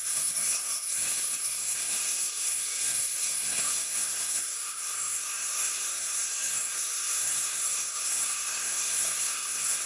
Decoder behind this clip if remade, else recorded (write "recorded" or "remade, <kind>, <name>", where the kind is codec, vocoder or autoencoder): remade, codec, SNAC